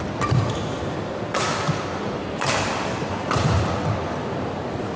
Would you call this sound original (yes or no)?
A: no